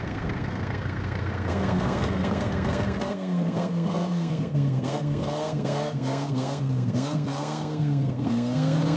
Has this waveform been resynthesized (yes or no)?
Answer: yes